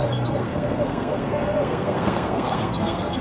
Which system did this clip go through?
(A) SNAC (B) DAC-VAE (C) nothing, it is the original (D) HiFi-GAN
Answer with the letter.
A